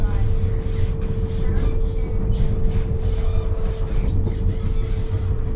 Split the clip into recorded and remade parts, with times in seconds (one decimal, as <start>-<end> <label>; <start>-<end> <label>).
0.0-5.6 recorded